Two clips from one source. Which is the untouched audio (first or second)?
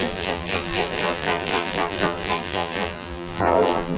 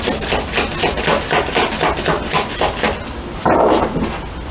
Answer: second